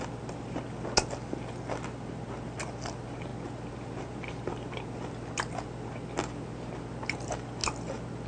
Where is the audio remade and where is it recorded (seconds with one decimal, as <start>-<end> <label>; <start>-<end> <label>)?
0.0-8.3 recorded